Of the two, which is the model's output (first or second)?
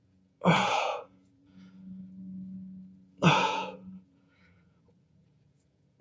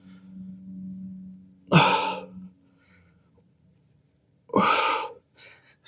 first